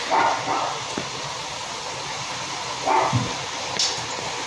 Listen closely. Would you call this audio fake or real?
real